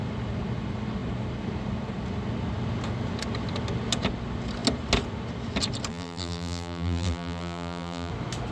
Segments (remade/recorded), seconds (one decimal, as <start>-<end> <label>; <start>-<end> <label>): 0.0-5.9 recorded; 5.9-8.1 remade; 8.1-8.5 recorded